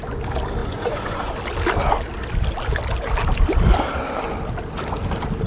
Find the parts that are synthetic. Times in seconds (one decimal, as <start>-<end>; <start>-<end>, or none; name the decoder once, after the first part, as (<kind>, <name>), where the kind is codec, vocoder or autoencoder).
0.6-1.3 (vocoder, Vocos)